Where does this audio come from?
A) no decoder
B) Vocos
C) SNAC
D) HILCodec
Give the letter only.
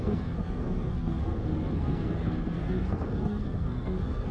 C